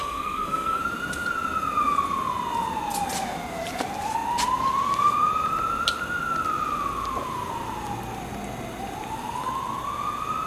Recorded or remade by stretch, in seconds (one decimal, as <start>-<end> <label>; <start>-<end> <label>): 0.0-0.8 remade; 0.8-10.5 recorded